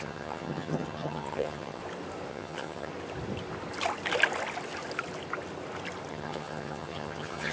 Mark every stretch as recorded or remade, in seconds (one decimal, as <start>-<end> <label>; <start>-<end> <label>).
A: 0.0-1.8 remade; 1.8-2.3 recorded; 2.3-2.9 remade; 2.9-6.1 recorded; 6.1-7.5 remade